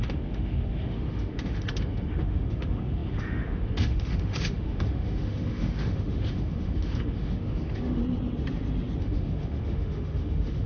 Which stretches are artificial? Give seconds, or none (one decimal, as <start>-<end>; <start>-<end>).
0.0-8.0; 9.0-10.7